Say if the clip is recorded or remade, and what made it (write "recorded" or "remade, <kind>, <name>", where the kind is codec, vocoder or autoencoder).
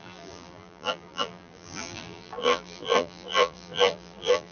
remade, vocoder, BigVGAN v2